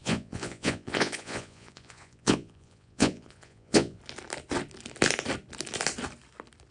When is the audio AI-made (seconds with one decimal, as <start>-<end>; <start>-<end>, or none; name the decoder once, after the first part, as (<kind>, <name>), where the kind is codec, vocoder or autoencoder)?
0.0-4.0 (vocoder, Vocos)

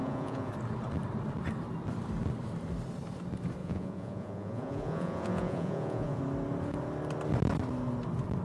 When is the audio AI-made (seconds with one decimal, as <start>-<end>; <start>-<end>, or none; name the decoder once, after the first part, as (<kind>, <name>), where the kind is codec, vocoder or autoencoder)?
0.0-0.5 (vocoder, Vocos); 3.6-6.2

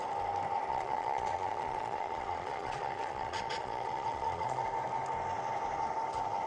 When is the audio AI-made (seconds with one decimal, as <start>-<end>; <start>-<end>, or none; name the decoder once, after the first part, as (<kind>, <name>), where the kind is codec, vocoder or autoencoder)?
0.7-4.6 (vocoder, Vocos)

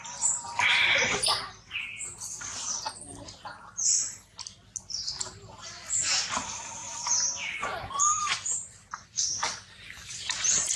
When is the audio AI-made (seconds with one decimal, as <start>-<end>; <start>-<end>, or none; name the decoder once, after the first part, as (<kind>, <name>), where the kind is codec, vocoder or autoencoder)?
none

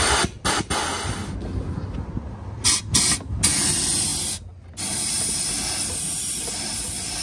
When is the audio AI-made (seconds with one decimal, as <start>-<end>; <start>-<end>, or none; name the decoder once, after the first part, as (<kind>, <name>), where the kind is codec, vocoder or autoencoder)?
none

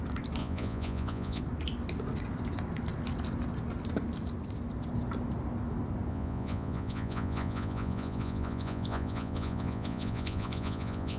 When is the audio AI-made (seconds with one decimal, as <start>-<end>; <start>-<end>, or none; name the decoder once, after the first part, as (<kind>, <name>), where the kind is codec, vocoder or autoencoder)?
0.4-1.4 (vocoder, Vocos); 6.1-11.2